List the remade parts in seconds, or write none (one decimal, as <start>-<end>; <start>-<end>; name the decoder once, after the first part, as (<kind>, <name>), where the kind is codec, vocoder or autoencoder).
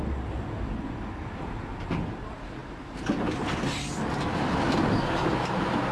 1.2-1.7 (vocoder, BigVGAN v2); 2.6-3.9